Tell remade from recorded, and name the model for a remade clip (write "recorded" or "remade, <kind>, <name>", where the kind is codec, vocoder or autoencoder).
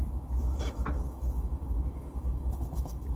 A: remade, autoencoder, DAC-VAE